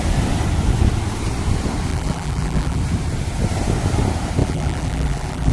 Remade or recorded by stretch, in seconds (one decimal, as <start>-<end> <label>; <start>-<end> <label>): 0.0-1.9 recorded; 1.9-2.8 remade; 2.8-4.4 recorded; 4.4-5.5 remade